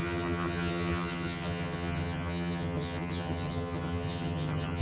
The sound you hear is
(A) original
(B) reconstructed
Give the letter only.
B